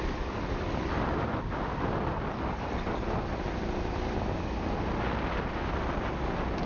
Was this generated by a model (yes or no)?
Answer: no